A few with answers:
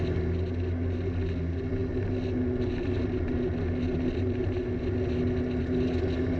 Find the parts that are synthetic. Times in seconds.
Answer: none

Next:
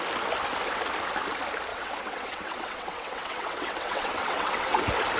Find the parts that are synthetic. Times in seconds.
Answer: 1.7-4.8 (vocoder, WaveNeXt)

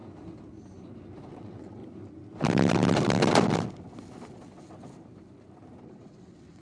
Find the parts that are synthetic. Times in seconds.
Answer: 1.3-1.8 (vocoder, WaveNeXt); 5.8-6.6

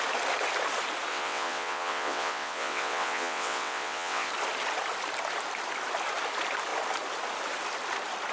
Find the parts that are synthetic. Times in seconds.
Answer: 1.1-4.3 (vocoder, WaveNeXt)

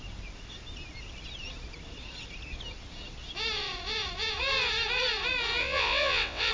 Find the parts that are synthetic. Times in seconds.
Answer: 5.6-6.5 (vocoder, WaveNeXt)

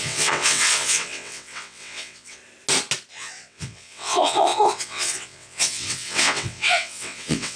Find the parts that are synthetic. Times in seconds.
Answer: 0.0-2.4 (vocoder, WaveNeXt); 3.1-7.6